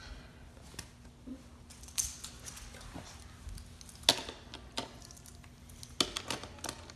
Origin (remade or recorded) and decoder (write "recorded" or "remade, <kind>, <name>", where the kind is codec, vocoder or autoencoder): recorded